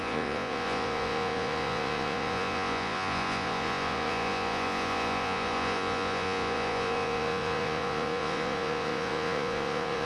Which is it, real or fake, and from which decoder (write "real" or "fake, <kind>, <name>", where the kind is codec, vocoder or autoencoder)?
fake, vocoder, Vocos